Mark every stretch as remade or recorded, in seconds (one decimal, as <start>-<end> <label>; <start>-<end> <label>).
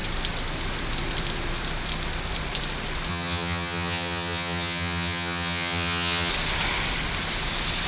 0.0-3.1 recorded; 3.1-6.3 remade; 6.3-7.9 recorded